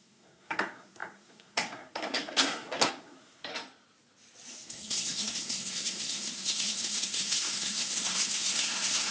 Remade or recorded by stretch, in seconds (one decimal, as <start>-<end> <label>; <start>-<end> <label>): 0.0-3.5 remade; 3.5-4.5 recorded; 4.5-9.1 remade